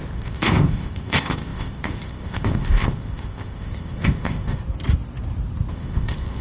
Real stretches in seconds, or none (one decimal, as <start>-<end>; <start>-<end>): 4.6-5.7